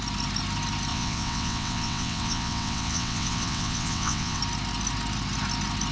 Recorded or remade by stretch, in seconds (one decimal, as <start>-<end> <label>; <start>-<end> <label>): 0.0-0.9 recorded; 0.9-4.4 remade; 4.4-5.9 recorded